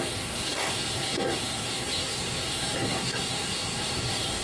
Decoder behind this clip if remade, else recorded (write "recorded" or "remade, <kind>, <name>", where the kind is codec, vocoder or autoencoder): remade, codec, SNAC